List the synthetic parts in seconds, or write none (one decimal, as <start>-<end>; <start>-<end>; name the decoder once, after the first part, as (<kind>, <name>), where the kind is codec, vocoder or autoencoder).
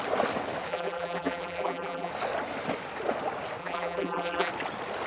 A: 0.7-2.1 (vocoder, BigVGAN v2); 3.6-4.5